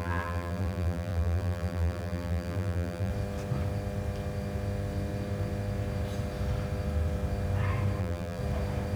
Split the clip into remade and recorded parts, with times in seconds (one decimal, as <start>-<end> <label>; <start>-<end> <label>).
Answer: 0.0-3.1 remade; 3.1-8.0 recorded; 8.0-8.4 remade; 8.4-9.0 recorded